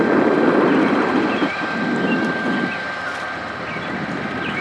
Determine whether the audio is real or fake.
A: real